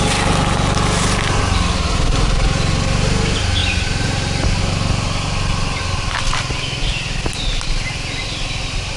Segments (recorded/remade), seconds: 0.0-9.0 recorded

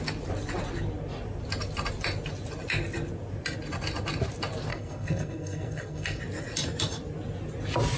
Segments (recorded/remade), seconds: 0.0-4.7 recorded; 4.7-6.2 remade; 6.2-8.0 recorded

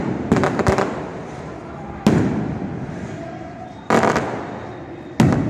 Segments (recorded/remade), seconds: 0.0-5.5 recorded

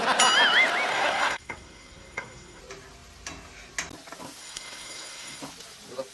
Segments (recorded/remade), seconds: 0.0-0.9 recorded; 0.9-2.6 remade; 2.6-4.4 recorded; 4.4-5.4 remade; 5.4-6.1 recorded

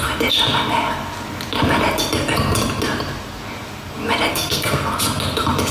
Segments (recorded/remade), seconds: 0.0-4.3 recorded; 4.3-4.9 remade; 4.9-5.7 recorded